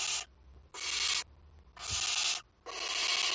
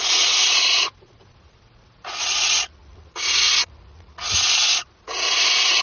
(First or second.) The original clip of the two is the first